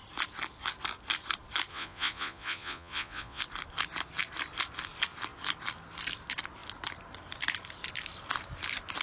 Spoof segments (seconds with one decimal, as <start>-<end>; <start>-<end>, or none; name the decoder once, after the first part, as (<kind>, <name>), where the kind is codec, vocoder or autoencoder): 1.7-3.4 (vocoder, Vocos)

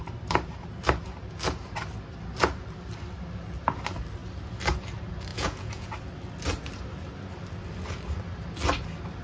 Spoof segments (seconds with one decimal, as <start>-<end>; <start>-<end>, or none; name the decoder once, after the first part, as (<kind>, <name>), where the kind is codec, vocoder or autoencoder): 5.3-5.9 (vocoder, Vocos)